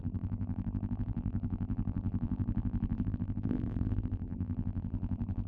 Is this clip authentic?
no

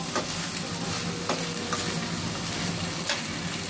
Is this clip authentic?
yes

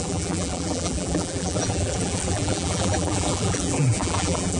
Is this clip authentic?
no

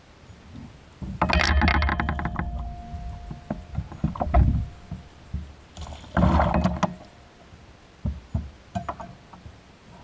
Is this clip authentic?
yes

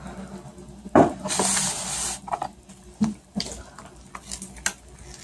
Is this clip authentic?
no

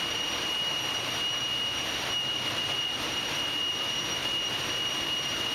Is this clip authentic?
no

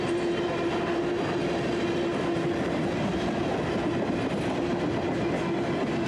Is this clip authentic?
yes